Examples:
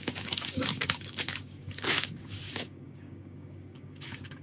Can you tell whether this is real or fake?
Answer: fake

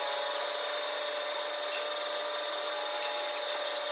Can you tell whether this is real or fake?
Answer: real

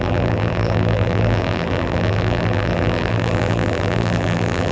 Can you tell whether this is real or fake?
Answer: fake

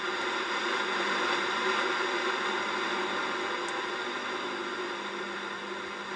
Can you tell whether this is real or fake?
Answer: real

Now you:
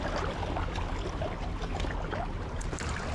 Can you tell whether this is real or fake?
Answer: real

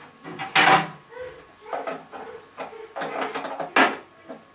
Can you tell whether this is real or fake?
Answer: real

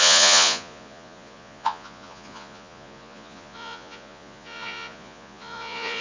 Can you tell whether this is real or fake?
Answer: fake